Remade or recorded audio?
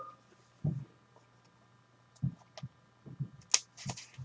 recorded